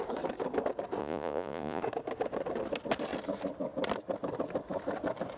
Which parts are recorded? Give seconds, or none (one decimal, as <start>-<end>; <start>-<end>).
0.0-1.0; 1.8-5.4